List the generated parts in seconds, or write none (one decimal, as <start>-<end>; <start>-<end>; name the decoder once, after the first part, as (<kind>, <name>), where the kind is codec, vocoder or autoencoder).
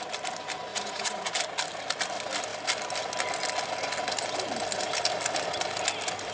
0.7-1.3 (vocoder, Vocos)